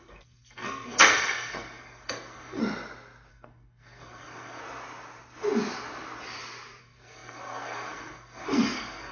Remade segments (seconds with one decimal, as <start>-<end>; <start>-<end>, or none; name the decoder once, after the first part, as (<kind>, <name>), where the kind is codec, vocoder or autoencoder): 0.0-2.6 (codec, SNAC); 3.3-4.6; 6.8-9.1